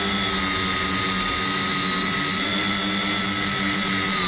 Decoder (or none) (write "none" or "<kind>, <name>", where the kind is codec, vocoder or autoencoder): none